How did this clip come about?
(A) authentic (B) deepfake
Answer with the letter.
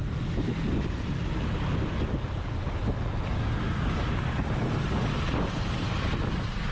A